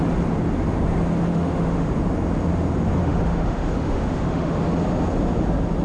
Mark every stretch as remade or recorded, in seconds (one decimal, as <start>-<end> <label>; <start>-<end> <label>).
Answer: 0.0-1.3 recorded; 1.3-1.9 remade; 1.9-3.0 recorded; 3.0-4.6 remade; 4.6-5.8 recorded